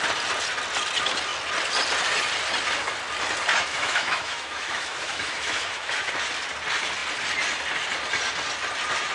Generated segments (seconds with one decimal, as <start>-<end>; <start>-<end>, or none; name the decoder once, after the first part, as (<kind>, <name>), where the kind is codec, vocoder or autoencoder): 3.5-6.1 (autoencoder, DAC-VAE)